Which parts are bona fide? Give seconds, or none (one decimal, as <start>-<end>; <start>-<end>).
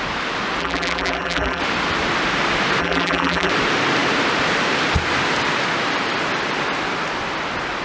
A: 0.0-0.6; 1.6-2.8; 3.5-7.8